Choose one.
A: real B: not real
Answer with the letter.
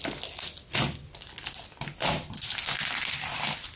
A